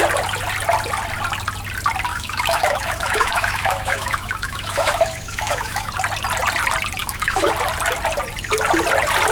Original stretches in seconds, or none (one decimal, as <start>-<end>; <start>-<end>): 0.0-2.1; 5.9-7.0; 7.5-9.3